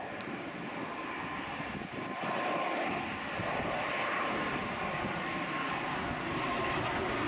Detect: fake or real real